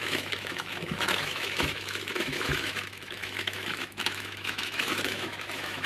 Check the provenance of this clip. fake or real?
fake